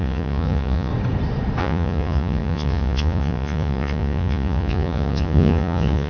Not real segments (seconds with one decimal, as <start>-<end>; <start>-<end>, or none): 0.0-0.9; 1.6-6.1